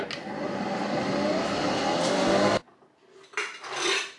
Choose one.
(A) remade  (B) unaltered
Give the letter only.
B